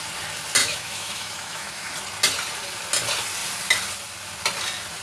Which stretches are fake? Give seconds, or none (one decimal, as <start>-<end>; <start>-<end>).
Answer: 0.6-1.9